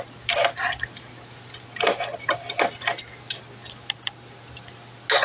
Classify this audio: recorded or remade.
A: recorded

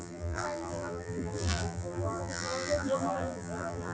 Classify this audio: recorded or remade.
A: remade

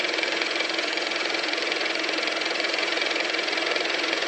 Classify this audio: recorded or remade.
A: remade